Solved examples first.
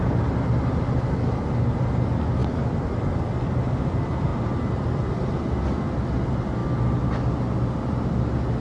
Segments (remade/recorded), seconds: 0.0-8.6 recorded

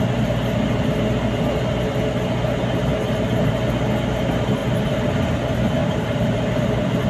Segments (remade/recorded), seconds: 0.0-5.8 recorded; 5.8-6.4 remade; 6.4-7.1 recorded

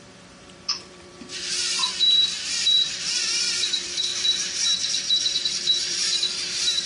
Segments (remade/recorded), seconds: 0.0-4.1 remade; 4.1-5.2 recorded; 5.2-6.9 remade